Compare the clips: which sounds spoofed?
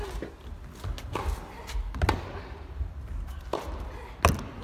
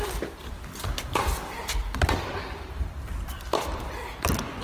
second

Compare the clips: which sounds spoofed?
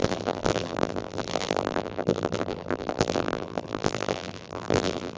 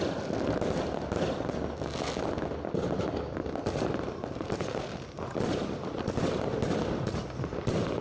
first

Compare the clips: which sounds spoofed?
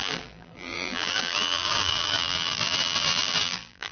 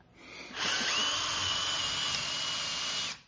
first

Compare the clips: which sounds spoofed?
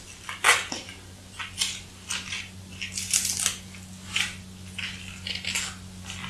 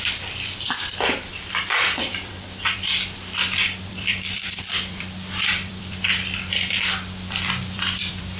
second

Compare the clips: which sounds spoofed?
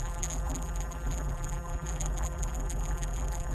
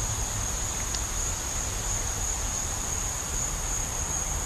first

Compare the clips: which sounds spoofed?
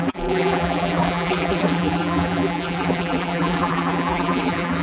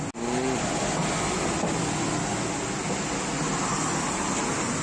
first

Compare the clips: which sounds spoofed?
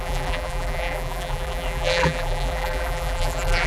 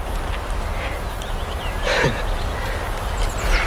first